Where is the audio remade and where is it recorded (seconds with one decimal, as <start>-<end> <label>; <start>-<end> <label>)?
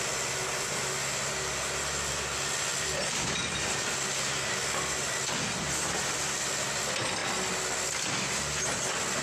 0.0-2.7 recorded; 2.7-4.1 remade; 4.1-9.2 recorded